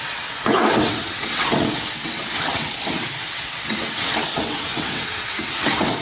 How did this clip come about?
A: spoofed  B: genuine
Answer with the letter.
A